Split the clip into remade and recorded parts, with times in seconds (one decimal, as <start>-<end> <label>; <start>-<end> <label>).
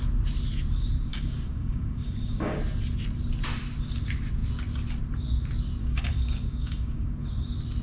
0.0-1.1 recorded; 1.1-2.6 remade; 2.6-5.8 recorded; 5.8-7.3 remade; 7.3-7.8 recorded